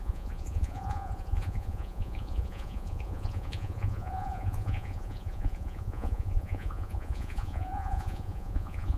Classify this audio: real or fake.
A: fake